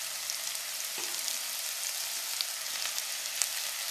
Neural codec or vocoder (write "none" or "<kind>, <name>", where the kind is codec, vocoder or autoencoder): none